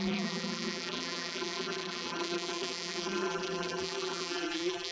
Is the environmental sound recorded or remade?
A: remade